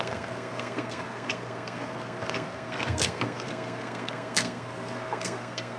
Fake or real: fake